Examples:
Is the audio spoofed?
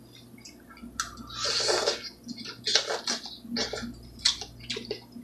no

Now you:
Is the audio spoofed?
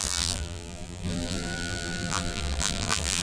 yes